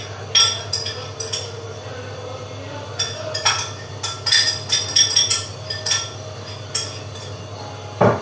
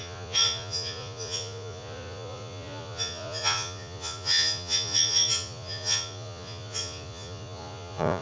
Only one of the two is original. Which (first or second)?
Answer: first